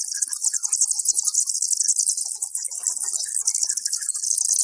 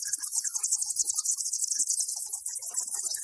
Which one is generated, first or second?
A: second